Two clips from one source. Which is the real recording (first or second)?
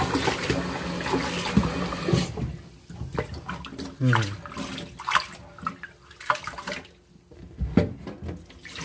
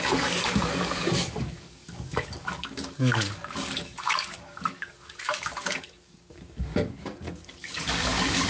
first